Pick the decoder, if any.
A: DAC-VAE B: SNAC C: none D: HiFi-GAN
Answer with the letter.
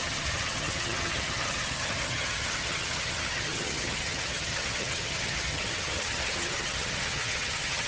D